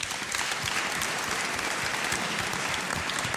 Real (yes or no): yes